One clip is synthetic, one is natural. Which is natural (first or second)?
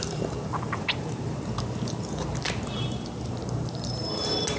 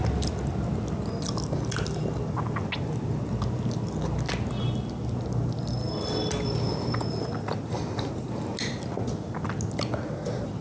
second